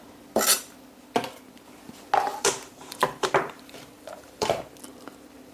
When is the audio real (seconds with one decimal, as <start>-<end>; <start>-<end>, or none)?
0.0-2.3; 4.6-5.5